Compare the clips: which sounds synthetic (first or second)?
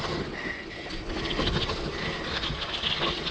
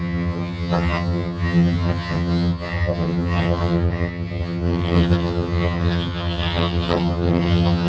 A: second